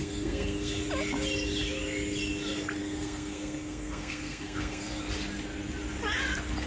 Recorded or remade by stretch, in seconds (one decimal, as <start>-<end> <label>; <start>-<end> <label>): 0.0-0.8 remade; 0.8-2.8 recorded; 2.8-5.0 remade; 5.0-6.7 recorded